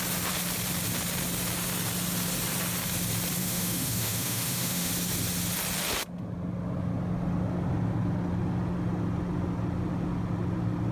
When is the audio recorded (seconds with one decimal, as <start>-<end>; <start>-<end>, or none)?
0.0-3.4; 4.9-10.9